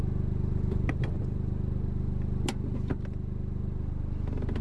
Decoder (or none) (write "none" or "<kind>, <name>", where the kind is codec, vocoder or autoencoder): none